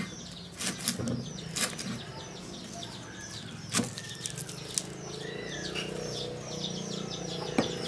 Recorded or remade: recorded